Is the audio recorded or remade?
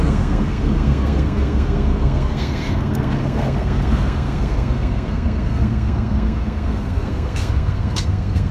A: remade